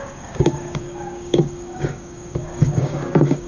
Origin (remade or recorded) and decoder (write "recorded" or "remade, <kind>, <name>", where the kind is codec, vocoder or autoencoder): remade, codec, DAC